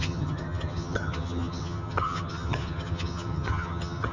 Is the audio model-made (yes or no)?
yes